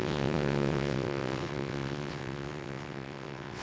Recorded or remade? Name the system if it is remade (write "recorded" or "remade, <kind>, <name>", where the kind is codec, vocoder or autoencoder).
remade, vocoder, WaveNeXt